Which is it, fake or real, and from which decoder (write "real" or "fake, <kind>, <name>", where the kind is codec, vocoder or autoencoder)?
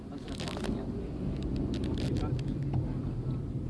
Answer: real